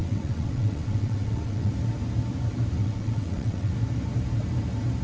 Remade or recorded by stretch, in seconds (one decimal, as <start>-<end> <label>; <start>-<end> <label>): 0.0-1.7 remade; 1.7-2.8 recorded; 2.8-3.7 remade; 3.7-5.0 recorded